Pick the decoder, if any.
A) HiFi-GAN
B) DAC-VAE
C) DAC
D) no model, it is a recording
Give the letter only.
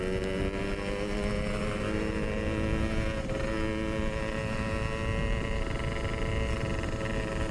D